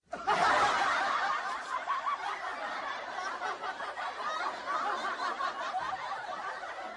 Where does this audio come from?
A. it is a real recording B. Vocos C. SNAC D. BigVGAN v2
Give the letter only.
A